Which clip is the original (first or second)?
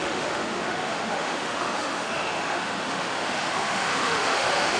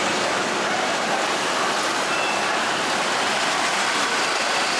second